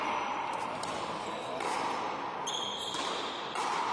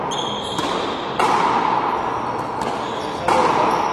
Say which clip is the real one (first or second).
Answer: second